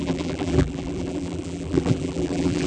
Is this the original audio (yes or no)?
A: no